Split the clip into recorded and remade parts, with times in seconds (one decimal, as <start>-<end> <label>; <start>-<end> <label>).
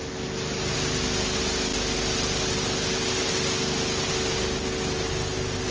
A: 0.0-5.7 recorded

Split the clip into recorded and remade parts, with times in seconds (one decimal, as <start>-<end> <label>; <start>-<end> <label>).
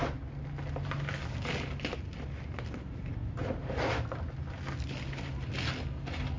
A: 0.0-6.4 recorded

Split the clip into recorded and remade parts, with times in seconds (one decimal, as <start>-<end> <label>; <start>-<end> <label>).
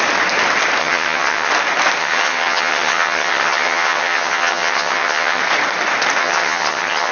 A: 0.0-0.8 recorded; 0.8-1.5 remade; 1.5-2.0 recorded; 2.0-5.4 remade; 5.4-6.2 recorded; 6.2-7.1 remade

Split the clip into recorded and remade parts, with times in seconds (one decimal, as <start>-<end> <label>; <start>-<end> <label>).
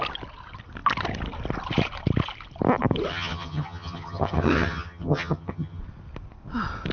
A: 0.0-3.1 recorded; 3.1-5.8 remade; 5.8-6.9 recorded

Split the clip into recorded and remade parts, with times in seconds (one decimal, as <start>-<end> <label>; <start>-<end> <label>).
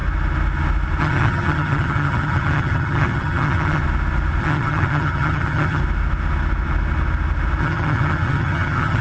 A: 0.0-1.0 recorded; 1.0-3.8 remade; 3.8-4.4 recorded; 4.4-5.8 remade; 5.8-7.6 recorded; 7.6-9.0 remade